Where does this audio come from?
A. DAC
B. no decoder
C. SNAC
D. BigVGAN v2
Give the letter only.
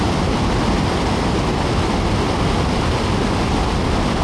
B